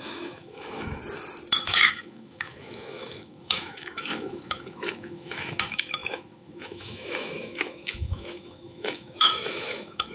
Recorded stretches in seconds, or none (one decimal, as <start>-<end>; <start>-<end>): 1.0-1.6